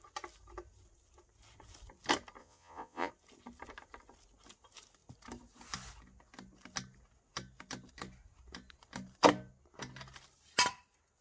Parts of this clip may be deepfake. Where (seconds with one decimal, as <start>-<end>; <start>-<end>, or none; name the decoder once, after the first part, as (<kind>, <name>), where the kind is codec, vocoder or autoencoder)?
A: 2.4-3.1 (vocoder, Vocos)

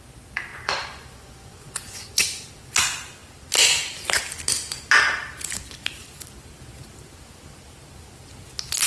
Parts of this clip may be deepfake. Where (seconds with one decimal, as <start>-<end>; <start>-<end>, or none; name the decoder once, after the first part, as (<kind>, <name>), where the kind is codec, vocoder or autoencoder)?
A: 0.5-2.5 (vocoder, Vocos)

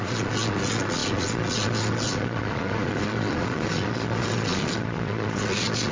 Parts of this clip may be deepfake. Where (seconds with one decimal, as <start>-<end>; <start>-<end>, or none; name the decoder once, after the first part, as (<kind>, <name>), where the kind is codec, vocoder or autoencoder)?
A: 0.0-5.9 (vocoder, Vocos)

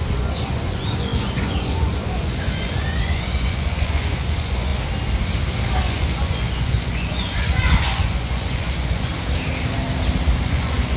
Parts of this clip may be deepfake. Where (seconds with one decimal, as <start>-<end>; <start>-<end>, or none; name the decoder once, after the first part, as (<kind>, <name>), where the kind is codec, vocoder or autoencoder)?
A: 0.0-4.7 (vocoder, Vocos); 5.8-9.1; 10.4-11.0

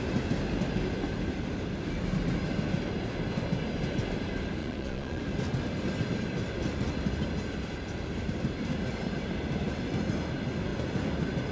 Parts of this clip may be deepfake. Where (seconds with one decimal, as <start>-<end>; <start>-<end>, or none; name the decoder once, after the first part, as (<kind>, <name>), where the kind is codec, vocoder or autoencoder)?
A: 4.6-5.2 (vocoder, Vocos)

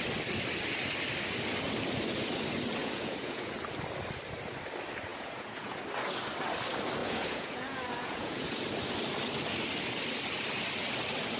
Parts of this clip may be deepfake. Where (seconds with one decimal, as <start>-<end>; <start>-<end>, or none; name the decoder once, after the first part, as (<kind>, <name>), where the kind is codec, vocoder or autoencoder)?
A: 2.8-3.5 (vocoder, Vocos); 5.1-5.8; 7.0-8.6